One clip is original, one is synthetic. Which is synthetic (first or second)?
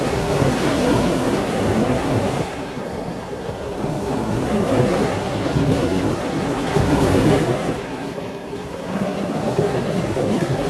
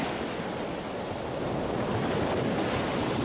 first